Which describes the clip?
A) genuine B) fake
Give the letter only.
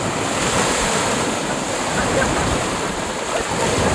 B